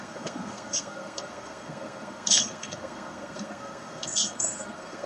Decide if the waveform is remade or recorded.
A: remade